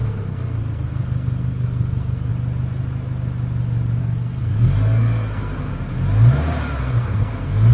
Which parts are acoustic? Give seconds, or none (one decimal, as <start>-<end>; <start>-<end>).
2.3-4.0; 5.7-6.8